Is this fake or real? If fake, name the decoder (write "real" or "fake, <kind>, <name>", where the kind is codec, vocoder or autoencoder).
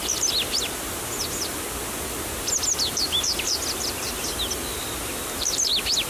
real